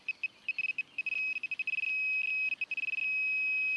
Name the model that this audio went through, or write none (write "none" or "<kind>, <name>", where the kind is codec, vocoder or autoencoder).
none